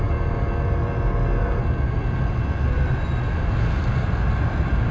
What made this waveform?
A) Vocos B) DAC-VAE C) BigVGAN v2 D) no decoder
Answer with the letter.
D